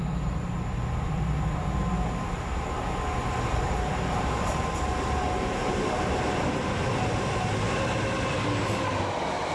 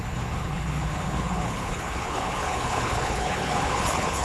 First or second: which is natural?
first